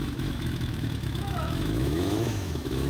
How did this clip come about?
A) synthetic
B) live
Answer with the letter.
A